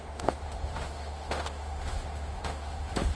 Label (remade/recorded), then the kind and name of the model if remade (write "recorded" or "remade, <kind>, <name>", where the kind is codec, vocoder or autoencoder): remade, autoencoder, DAC-VAE